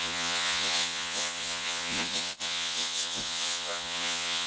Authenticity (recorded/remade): remade